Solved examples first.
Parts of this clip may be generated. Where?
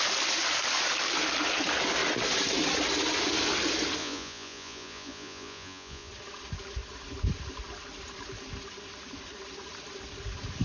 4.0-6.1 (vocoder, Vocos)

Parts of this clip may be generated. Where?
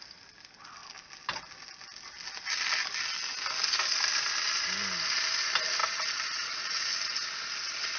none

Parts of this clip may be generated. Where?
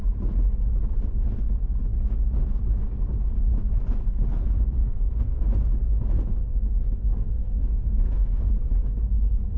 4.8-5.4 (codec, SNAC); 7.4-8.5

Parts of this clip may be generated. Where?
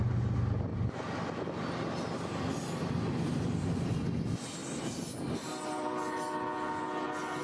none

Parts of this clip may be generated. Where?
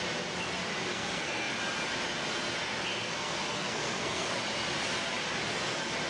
0.9-1.5 (codec, SNAC); 2.9-4.4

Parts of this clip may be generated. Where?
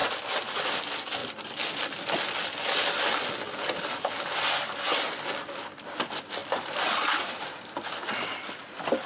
1.2-2.5 (vocoder, BigVGAN v2); 6.4-7.4